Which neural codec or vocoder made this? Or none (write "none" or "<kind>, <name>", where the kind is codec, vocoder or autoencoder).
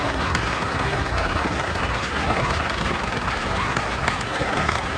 codec, SNAC